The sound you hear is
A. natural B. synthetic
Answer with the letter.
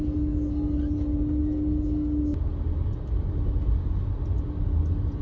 A